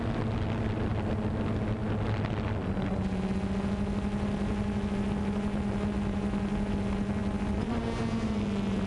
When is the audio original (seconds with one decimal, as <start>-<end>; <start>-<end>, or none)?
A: 0.0-8.9

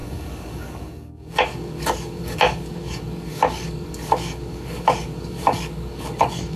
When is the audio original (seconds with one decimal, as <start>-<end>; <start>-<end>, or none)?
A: none

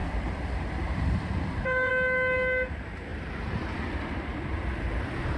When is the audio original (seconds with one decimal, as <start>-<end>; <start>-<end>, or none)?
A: 1.9-3.1; 3.9-5.4

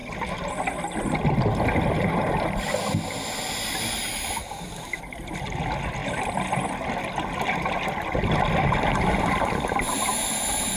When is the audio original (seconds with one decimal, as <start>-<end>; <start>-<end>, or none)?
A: 0.0-10.8